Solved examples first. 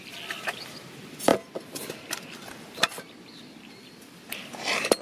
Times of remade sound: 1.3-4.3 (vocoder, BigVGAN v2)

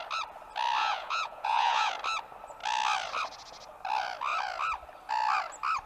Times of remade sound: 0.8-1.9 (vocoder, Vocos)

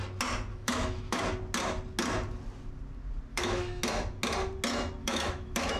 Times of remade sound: 0.5-1.2 (autoencoder, DAC-VAE); 3.3-3.8; 5.0-5.8

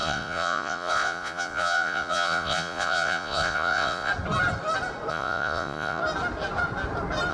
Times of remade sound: 0.0-4.1 (vocoder, Vocos); 5.1-6.0

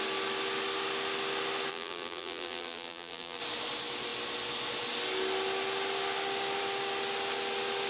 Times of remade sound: 1.7-3.4 (vocoder, BigVGAN v2)

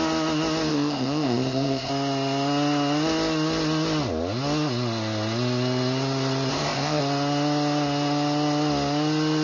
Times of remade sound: 0.7-1.9 (codec, ZipCodec); 6.5-7.0

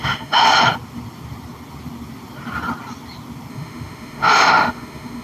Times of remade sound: 0.0-0.4 (autoencoder, DAC-VAE); 3.5-5.2

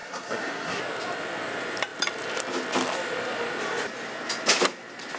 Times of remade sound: 0.0-0.8 (codec, SNAC)